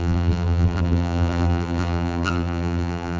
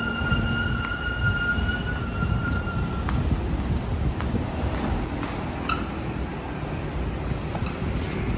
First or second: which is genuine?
second